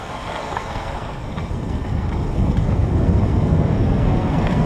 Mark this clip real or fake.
fake